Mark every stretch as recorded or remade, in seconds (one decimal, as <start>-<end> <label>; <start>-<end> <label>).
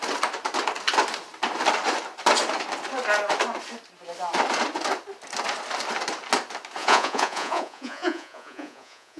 0.0-6.8 recorded; 6.8-9.2 remade